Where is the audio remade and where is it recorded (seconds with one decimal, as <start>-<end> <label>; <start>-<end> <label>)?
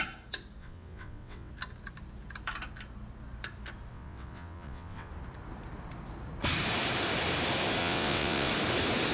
0.0-0.6 recorded; 0.6-1.5 remade; 1.5-3.9 recorded; 3.9-5.1 remade; 5.1-7.8 recorded; 7.8-8.5 remade; 8.5-9.1 recorded